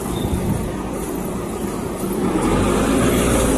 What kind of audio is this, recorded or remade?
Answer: recorded